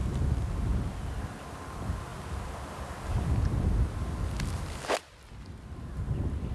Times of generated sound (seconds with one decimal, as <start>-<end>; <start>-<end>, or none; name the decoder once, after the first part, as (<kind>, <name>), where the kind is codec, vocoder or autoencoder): none